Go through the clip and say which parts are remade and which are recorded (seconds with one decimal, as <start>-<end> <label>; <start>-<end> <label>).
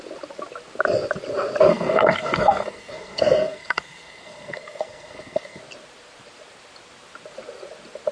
0.0-1.7 recorded; 1.7-5.6 remade; 5.6-8.1 recorded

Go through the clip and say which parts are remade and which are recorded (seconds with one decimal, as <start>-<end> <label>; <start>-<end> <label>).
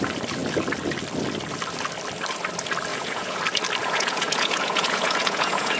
0.0-2.9 recorded; 2.9-3.4 remade; 3.4-3.8 recorded; 3.8-5.8 remade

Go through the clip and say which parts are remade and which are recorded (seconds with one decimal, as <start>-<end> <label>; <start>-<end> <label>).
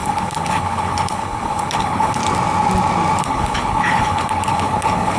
0.0-2.2 remade; 2.2-3.2 recorded; 3.2-5.2 remade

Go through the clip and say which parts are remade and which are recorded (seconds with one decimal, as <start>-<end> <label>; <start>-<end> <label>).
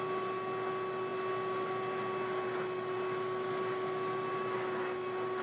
0.0-5.4 recorded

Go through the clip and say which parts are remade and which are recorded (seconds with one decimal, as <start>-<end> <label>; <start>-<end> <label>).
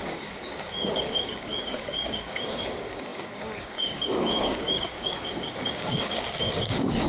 0.0-7.1 remade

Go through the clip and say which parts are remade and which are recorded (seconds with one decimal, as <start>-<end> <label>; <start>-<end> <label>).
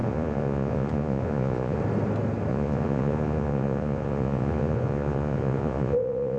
0.0-1.8 remade; 1.8-2.5 recorded; 2.5-6.4 remade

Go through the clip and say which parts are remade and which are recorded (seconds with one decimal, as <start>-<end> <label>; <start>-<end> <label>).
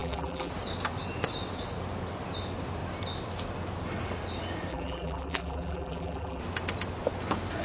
0.0-0.5 remade; 0.5-4.7 recorded; 4.7-6.4 remade; 6.4-7.6 recorded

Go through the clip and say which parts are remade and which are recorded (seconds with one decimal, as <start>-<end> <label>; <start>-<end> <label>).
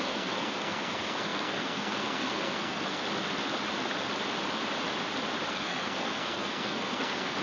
0.0-3.0 remade; 3.0-5.5 recorded; 5.5-7.4 remade